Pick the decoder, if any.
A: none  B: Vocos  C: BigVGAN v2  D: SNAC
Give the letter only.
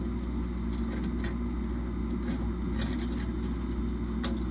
A